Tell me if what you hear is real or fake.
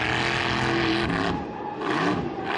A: real